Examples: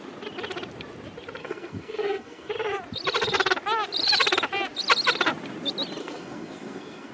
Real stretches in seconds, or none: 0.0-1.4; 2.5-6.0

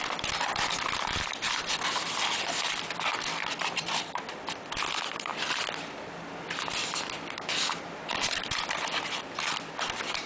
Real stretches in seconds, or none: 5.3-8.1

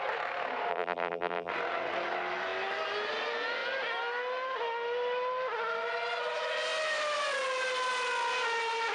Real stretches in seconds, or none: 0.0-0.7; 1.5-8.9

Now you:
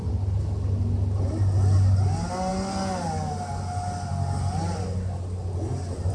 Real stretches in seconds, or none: 0.0-6.1

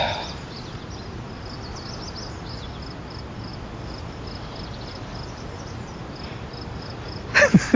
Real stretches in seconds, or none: 0.0-7.8